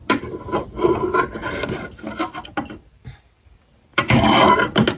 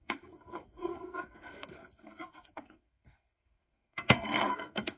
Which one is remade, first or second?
second